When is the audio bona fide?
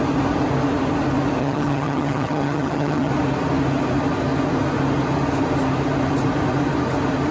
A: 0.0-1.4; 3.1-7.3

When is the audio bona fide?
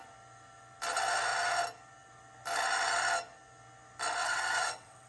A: 0.0-4.2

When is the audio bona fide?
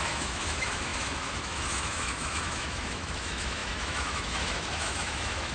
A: none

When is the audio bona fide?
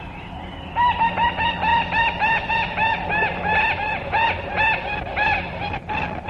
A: 0.0-6.3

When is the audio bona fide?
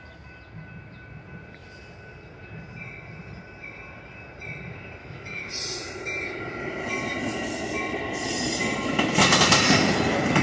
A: 0.0-5.0; 5.5-10.4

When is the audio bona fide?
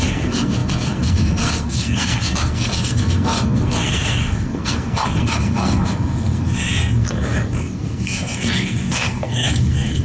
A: none